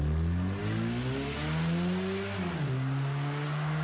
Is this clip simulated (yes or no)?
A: no